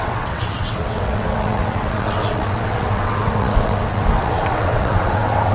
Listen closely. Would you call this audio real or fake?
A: fake